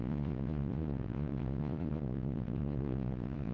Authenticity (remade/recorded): remade